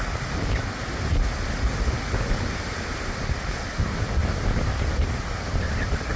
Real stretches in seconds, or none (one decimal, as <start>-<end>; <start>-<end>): 0.0-6.2